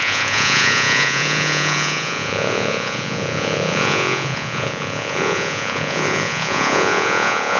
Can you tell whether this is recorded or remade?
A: remade